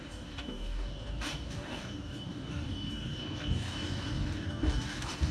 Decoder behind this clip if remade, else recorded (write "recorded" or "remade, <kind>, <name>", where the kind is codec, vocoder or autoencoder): remade, codec, DAC